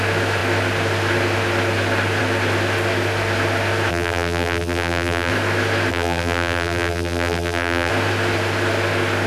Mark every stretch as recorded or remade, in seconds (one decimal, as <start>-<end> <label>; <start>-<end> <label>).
0.0-3.9 recorded; 3.9-5.3 remade; 5.3-5.9 recorded; 5.9-7.9 remade; 7.9-9.3 recorded